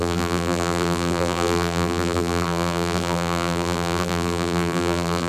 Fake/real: fake